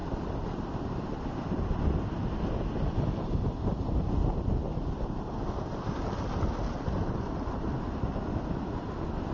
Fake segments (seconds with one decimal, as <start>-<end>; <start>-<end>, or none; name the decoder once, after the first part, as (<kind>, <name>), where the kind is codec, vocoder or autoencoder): none